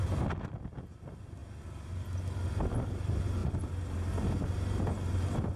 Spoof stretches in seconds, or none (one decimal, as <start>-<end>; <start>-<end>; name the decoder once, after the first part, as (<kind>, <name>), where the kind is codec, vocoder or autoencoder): none